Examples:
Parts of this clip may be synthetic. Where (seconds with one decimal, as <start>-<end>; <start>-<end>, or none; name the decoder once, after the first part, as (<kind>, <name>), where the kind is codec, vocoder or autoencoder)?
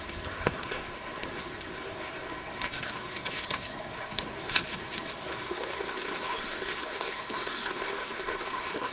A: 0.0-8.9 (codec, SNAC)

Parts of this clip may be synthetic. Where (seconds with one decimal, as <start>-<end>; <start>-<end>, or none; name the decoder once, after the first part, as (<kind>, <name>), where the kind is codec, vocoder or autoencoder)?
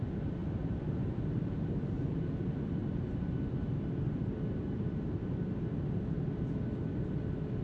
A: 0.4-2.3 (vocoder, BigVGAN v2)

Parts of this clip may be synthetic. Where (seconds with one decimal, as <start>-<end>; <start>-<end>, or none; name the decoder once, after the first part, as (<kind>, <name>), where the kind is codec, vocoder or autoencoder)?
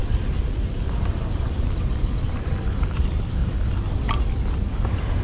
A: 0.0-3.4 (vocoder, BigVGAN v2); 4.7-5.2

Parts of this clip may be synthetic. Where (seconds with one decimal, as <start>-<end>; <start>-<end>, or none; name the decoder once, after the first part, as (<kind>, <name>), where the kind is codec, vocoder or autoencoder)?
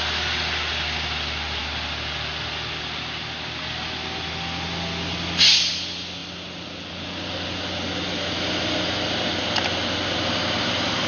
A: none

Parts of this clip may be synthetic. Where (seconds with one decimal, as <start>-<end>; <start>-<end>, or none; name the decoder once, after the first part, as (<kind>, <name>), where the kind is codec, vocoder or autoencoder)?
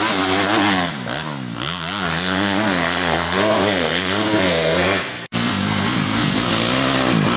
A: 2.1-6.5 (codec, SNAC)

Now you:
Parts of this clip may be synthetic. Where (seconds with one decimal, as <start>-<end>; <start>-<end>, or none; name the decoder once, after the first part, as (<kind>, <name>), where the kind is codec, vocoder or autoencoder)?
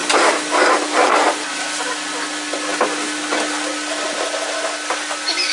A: none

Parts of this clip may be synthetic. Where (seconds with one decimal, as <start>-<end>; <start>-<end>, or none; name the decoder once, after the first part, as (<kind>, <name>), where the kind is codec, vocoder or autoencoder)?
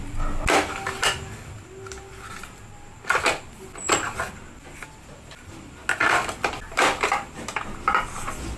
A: none